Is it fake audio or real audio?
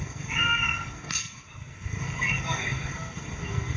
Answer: fake